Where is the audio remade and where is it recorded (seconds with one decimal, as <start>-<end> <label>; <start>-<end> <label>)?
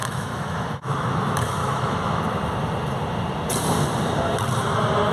0.0-2.2 remade; 2.2-5.1 recorded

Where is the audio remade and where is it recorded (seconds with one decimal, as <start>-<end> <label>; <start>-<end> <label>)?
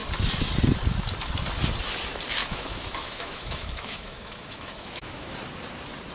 0.0-2.4 recorded; 2.4-5.3 remade; 5.3-6.1 recorded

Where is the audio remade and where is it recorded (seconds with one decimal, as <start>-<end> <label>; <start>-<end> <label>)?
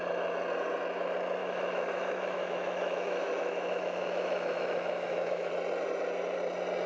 0.0-1.4 recorded; 1.4-5.5 remade; 5.5-6.9 recorded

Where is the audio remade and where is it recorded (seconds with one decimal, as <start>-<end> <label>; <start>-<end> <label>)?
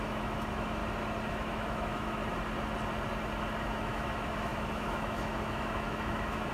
0.0-0.8 remade; 0.8-1.3 recorded; 1.3-2.2 remade; 2.2-3.6 recorded; 3.6-6.5 remade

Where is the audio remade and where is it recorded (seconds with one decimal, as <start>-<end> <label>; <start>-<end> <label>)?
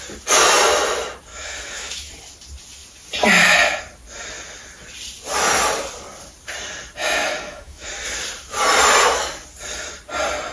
0.0-1.3 recorded; 1.3-2.1 remade; 2.1-7.0 recorded; 7.0-7.9 remade; 7.9-10.5 recorded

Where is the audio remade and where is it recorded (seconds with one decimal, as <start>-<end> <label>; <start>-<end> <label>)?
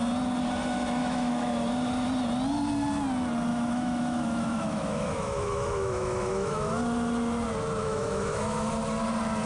0.0-1.0 recorded; 1.0-1.7 remade; 1.7-3.5 recorded; 3.5-6.7 remade; 6.7-7.8 recorded; 7.8-8.7 remade; 8.7-9.5 recorded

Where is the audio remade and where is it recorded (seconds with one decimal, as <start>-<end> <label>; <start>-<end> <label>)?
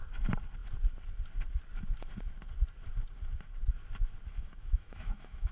0.0-4.3 recorded; 4.3-5.5 remade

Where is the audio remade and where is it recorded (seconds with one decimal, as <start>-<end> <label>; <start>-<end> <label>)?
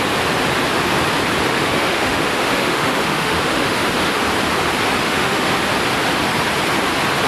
0.0-1.5 recorded; 1.5-4.2 remade; 4.2-5.0 recorded; 5.0-5.6 remade; 5.6-7.3 recorded